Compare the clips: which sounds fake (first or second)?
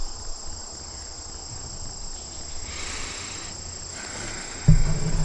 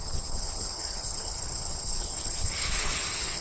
second